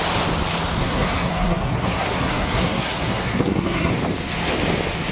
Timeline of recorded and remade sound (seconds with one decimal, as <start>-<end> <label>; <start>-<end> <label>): 0.0-0.8 recorded; 0.8-3.9 remade; 3.9-5.1 recorded